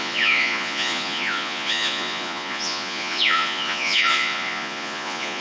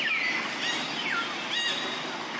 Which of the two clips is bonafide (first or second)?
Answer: second